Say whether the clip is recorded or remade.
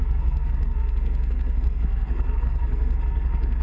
remade